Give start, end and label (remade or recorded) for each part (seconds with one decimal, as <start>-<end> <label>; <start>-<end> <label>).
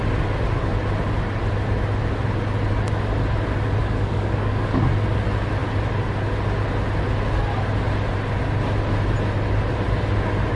0.0-3.8 recorded; 3.8-4.9 remade; 4.9-10.6 recorded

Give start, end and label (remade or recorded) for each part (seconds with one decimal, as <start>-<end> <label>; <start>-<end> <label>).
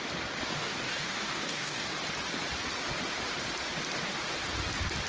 0.0-0.6 recorded; 0.6-1.9 remade; 1.9-5.1 recorded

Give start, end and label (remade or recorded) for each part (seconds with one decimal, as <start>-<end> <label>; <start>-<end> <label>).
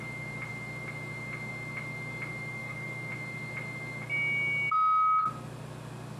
0.0-2.6 recorded; 2.6-3.1 remade; 3.1-6.2 recorded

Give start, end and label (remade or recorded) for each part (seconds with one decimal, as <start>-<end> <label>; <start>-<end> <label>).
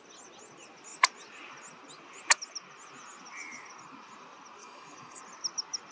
0.0-4.6 recorded; 4.6-5.2 remade; 5.2-5.9 recorded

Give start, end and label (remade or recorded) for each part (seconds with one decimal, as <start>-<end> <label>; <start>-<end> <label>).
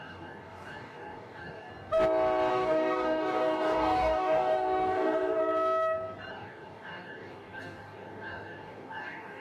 0.0-1.7 remade; 1.7-2.5 recorded; 2.5-5.4 remade; 5.4-6.3 recorded; 6.3-9.4 remade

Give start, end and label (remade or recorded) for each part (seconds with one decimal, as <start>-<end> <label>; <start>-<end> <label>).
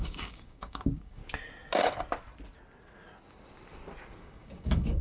0.0-1.2 remade; 1.2-4.2 recorded; 4.2-5.0 remade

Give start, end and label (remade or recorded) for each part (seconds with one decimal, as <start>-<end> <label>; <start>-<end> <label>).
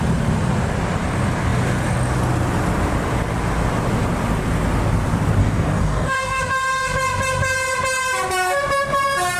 0.0-5.4 recorded; 5.4-6.4 remade; 6.4-9.4 recorded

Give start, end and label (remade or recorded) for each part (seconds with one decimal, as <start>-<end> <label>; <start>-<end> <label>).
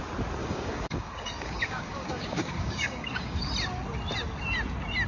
0.0-0.4 recorded; 0.4-3.5 remade; 3.5-5.1 recorded